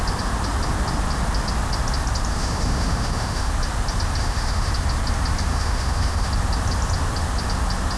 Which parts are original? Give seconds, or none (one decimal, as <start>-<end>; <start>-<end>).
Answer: 0.0-2.3; 3.5-4.2; 4.7-5.5; 6.3-8.0